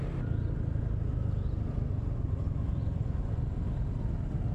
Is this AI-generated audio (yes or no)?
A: no